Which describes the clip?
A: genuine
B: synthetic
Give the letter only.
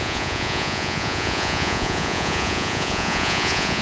B